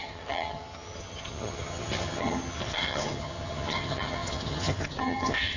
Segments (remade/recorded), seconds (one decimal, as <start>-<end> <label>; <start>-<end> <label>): 0.0-5.6 remade